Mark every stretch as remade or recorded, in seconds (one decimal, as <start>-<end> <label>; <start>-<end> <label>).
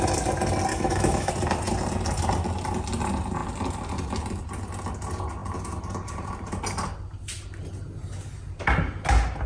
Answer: 0.0-0.7 recorded; 0.7-1.3 remade; 1.3-9.5 recorded